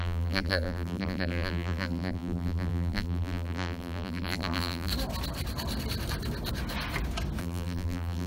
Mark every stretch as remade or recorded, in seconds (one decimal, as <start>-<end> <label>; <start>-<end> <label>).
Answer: 0.0-4.9 remade; 4.9-7.4 recorded; 7.4-8.3 remade